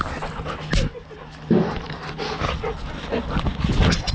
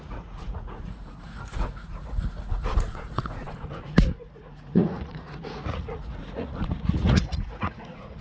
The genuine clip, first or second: first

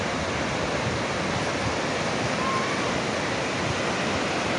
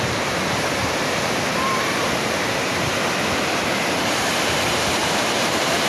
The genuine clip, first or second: first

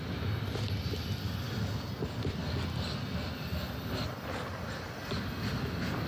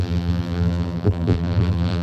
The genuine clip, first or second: first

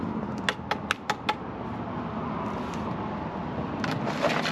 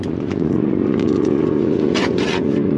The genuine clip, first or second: first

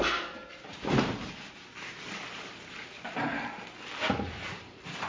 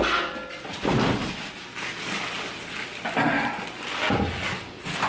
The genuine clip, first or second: second